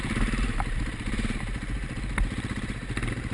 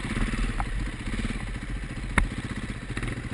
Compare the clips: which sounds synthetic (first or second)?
first